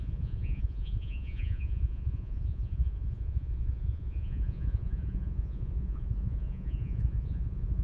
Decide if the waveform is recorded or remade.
remade